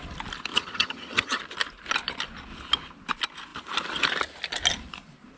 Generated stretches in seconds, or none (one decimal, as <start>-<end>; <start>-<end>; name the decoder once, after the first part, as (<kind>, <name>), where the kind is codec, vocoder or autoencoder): 0.5-1.4 (vocoder, HiFi-GAN)

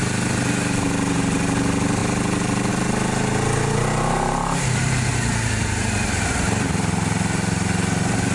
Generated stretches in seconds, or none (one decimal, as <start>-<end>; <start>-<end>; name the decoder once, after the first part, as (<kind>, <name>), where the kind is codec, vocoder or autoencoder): none

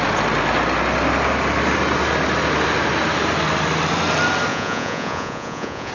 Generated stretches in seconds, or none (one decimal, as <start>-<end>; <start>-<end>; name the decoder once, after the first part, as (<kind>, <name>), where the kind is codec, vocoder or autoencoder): 4.5-5.9 (vocoder, Vocos)